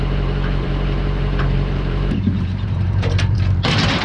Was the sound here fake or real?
fake